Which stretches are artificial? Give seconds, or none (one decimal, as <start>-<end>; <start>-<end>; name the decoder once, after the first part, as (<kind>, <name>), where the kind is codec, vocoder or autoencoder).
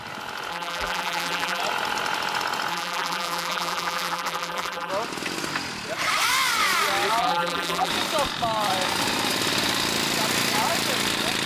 0.5-1.6 (vocoder, BigVGAN v2); 2.7-4.9; 7.2-7.9